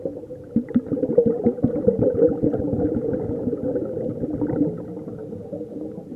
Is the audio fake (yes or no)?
no